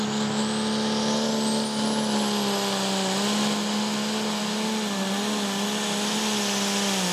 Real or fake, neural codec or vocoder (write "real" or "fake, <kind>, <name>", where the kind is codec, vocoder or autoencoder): real